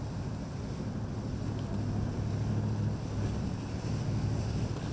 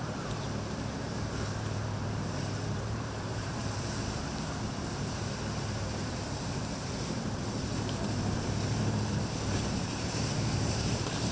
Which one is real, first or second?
first